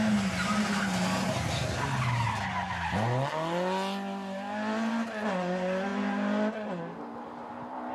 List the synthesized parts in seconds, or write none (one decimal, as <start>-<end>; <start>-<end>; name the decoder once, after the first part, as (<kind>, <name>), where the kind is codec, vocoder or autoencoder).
none